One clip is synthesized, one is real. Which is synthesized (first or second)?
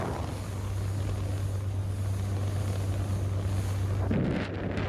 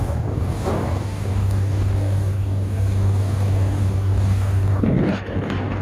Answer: second